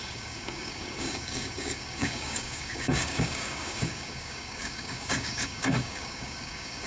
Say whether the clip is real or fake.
fake